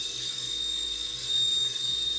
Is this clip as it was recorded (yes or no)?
no